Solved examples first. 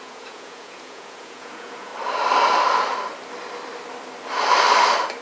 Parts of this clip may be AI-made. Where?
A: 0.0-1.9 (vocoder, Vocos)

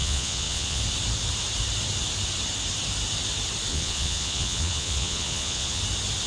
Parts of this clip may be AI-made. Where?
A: 0.0-0.8 (vocoder, Vocos); 3.7-5.8